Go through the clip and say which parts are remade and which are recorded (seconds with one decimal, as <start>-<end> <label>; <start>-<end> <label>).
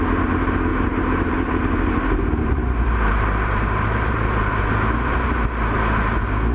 0.0-0.7 recorded; 0.7-4.6 remade; 4.6-6.5 recorded